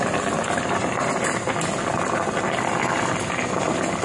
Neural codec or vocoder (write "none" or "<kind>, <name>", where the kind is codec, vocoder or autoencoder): none